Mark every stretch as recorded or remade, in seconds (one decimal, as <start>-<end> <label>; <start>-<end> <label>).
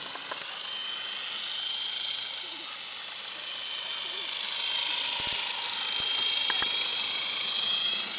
0.0-8.2 recorded